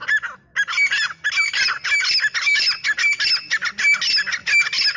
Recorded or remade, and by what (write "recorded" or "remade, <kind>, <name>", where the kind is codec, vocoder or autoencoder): recorded